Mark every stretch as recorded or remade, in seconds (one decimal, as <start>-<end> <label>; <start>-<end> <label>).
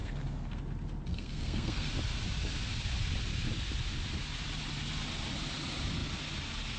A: 0.0-0.6 remade; 0.6-1.1 recorded; 1.1-1.9 remade; 1.9-6.8 recorded